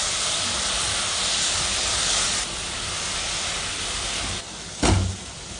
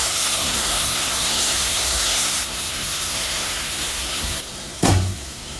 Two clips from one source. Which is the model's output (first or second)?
second